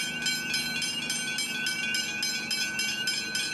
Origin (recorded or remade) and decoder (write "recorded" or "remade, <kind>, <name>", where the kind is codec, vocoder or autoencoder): recorded